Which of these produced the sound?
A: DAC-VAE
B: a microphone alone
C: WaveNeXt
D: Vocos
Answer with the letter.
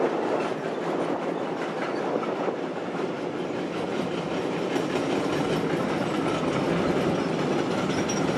B